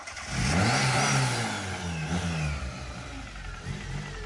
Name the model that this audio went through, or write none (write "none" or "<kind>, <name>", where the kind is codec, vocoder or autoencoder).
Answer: none